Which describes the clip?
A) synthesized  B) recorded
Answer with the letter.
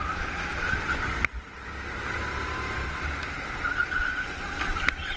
B